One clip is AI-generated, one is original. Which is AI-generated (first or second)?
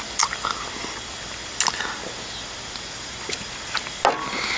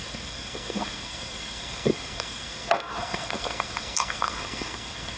second